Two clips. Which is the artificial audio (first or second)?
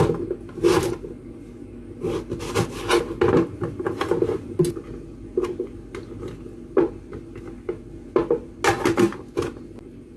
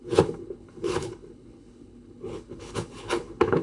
second